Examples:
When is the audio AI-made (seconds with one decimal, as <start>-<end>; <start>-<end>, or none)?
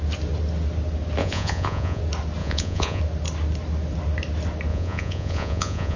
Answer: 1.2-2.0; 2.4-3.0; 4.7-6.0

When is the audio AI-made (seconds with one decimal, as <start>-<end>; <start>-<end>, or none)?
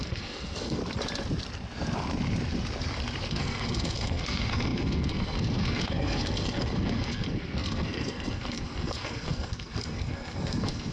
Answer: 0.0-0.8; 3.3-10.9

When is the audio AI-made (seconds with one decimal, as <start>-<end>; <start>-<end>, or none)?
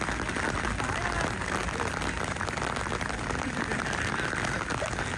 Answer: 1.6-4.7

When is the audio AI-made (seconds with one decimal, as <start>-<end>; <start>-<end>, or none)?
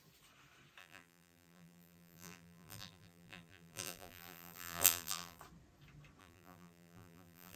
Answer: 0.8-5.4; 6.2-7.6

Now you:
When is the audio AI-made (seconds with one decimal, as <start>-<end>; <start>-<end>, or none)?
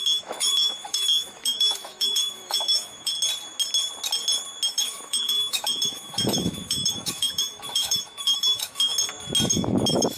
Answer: 0.0-3.1; 4.7-8.9; 9.5-10.2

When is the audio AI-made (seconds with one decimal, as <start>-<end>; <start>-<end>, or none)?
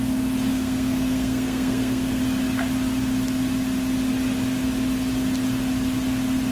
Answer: 0.5-2.2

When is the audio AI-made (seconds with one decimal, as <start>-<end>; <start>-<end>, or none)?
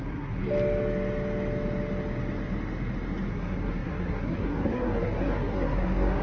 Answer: 0.0-0.4; 3.3-6.2